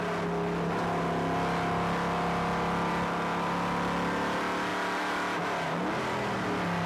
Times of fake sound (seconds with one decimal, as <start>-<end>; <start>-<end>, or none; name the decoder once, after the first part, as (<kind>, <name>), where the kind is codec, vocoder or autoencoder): none